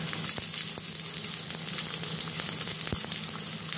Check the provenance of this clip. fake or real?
real